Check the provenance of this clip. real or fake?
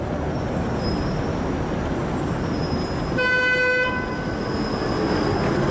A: real